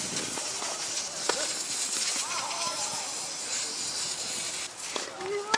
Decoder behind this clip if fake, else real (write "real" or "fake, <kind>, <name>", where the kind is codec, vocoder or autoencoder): real